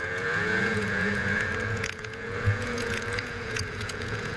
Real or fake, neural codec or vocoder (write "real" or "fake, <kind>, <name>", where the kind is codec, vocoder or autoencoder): fake, vocoder, Vocos